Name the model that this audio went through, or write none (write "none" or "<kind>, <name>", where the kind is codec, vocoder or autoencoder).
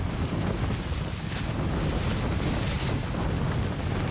none